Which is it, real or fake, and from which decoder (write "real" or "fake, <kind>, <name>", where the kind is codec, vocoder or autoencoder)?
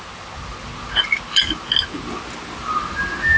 real